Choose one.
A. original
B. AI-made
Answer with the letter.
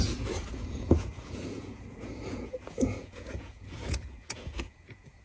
B